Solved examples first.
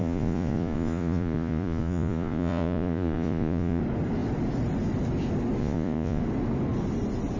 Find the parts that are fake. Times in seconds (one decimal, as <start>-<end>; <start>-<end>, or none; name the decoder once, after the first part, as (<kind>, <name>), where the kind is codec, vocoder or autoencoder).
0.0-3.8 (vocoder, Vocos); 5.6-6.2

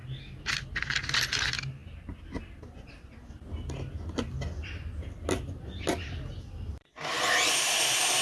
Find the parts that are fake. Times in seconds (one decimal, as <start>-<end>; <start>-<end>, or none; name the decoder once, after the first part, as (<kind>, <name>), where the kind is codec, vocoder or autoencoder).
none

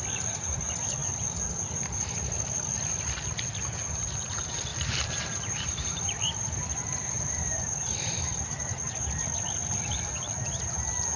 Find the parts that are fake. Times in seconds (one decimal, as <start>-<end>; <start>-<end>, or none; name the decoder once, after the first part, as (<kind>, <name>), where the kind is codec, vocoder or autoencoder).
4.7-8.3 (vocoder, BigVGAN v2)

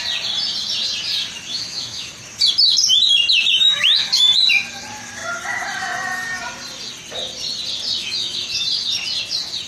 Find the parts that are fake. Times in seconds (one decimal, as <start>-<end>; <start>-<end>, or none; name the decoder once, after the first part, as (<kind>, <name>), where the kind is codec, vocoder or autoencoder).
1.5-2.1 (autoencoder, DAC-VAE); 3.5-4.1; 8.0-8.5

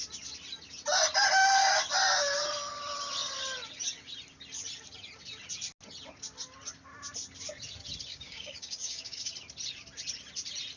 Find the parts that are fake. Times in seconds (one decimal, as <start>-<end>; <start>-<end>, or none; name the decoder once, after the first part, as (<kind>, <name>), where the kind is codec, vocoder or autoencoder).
8.1-9.3 (codec, DAC)

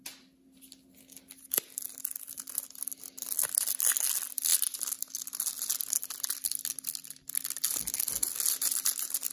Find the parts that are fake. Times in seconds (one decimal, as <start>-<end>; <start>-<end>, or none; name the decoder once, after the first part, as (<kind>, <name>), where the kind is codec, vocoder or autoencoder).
none

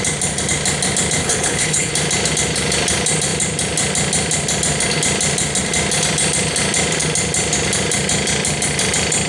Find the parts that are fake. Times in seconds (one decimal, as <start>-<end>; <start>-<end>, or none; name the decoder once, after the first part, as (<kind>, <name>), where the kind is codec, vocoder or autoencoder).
1.2-1.9 (codec, HILCodec)

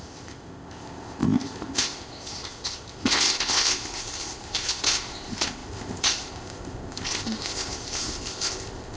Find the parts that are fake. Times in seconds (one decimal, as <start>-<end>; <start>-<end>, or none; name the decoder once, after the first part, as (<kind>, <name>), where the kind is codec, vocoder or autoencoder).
0.0-9.0 (codec, ZipCodec)